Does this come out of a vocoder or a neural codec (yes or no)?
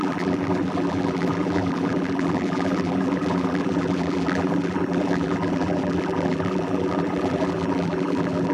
yes